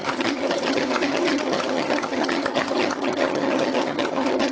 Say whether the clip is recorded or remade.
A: remade